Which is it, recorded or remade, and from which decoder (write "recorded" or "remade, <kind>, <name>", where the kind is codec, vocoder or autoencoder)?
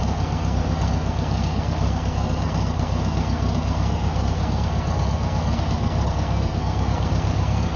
remade, codec, SNAC